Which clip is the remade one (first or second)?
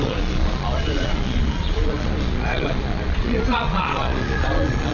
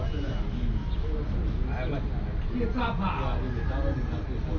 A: first